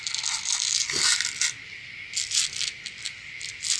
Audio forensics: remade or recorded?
recorded